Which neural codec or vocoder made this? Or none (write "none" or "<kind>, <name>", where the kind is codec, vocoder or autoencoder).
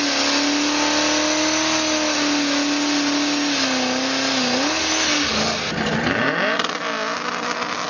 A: none